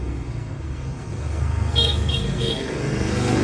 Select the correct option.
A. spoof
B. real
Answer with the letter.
A